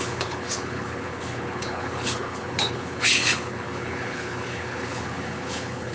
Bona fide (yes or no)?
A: no